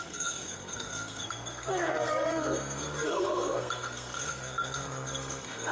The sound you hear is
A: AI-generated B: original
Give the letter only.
A